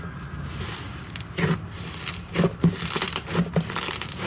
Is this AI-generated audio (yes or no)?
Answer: no